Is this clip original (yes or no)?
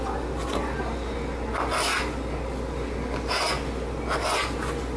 yes